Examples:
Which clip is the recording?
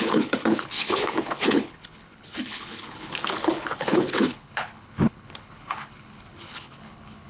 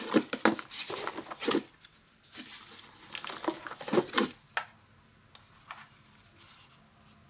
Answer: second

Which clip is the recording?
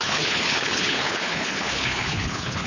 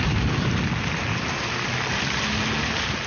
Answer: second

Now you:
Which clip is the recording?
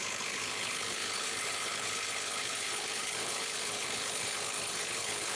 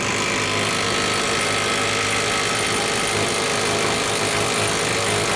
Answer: second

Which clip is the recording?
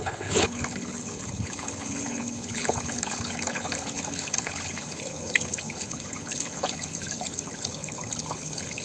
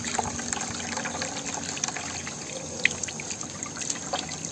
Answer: second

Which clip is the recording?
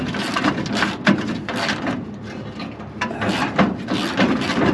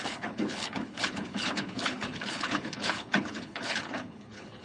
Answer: first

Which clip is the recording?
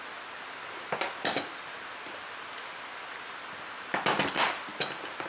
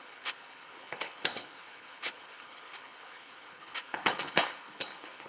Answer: first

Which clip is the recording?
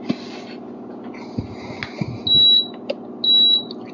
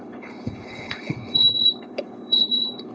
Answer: first